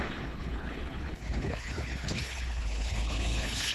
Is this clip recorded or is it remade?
remade